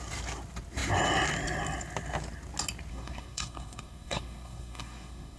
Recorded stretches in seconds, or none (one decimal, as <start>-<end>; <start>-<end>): 0.0-2.9

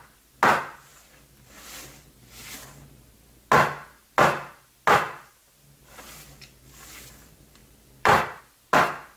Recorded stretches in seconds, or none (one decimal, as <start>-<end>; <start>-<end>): 0.0-7.6; 8.4-9.2

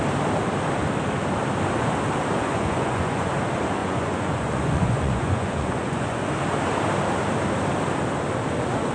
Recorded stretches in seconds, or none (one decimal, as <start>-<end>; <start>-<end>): 0.0-2.4; 3.3-3.8; 6.2-8.9

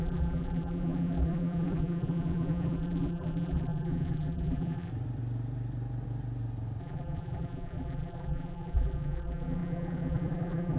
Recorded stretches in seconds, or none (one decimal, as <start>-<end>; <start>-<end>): 4.9-6.8

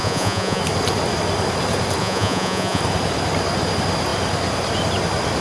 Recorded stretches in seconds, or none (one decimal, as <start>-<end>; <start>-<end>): 0.6-2.0; 2.8-5.4

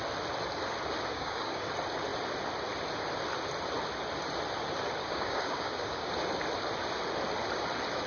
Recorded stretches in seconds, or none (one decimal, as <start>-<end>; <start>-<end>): 0.0-1.1; 1.7-5.0; 6.1-8.1

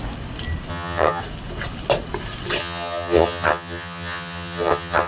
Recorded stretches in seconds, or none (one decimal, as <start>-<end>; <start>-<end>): 0.0-0.7; 1.2-2.6

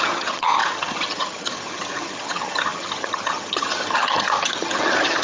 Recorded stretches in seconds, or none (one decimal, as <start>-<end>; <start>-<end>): none